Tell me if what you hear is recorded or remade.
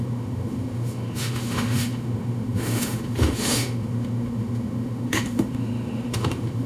remade